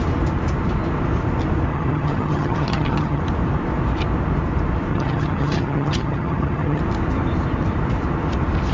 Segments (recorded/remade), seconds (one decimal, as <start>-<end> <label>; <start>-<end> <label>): 0.0-1.7 recorded; 1.7-3.2 remade; 3.2-4.9 recorded; 4.9-6.8 remade; 6.8-8.7 recorded